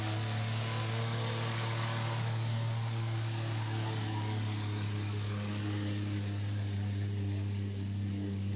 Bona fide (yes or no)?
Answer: no